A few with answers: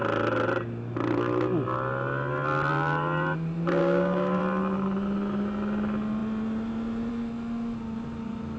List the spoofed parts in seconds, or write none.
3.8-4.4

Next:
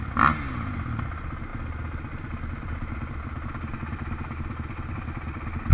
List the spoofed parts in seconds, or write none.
none

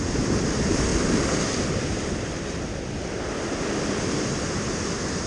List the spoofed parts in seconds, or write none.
none

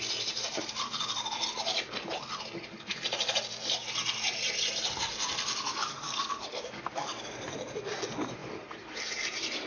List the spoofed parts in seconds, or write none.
5.8-7.2

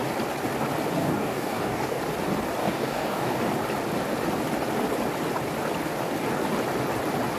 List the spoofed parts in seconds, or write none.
1.0-2.0; 2.6-3.4

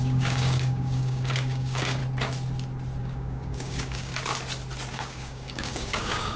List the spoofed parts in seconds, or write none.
0.0-2.0; 3.0-4.1; 4.9-6.4